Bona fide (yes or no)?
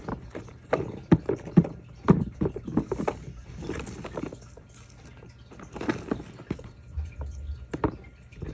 yes